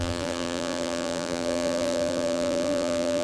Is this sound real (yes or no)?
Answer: no